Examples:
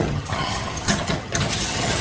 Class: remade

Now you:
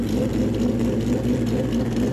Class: recorded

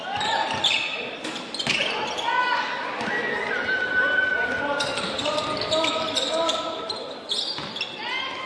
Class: recorded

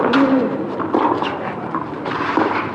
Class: remade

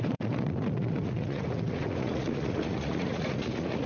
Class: remade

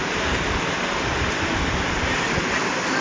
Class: recorded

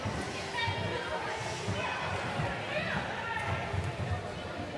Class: recorded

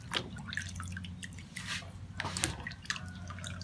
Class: recorded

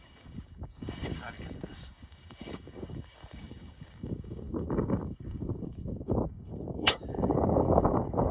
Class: remade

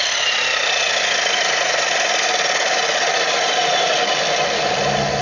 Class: recorded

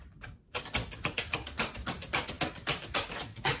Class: recorded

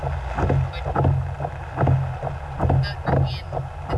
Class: recorded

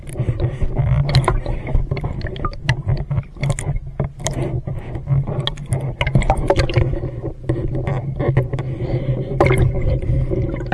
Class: recorded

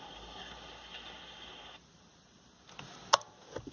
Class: recorded